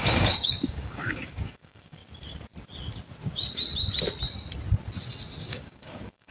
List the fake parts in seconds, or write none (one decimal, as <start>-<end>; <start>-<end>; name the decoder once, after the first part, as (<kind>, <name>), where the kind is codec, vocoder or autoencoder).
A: 0.0-2.0 (codec, DAC); 5.4-6.3